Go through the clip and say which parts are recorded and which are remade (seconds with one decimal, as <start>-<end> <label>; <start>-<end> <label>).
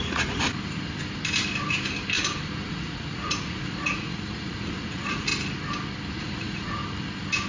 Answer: 0.0-0.5 remade; 0.5-2.7 recorded; 2.7-5.3 remade; 5.3-6.1 recorded; 6.1-6.8 remade; 6.8-7.5 recorded